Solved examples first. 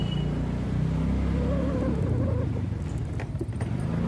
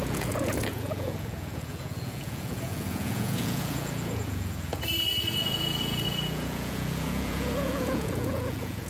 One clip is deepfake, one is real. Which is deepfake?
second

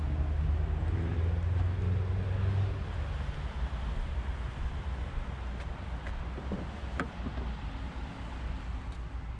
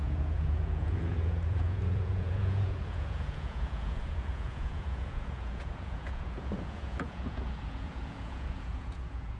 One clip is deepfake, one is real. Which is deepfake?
second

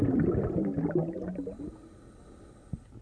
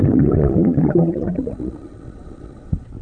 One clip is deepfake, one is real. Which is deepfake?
second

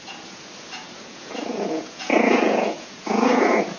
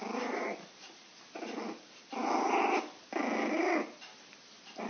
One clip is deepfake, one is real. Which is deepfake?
first